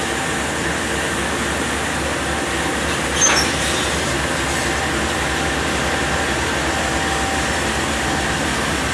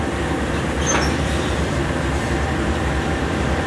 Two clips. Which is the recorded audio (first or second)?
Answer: first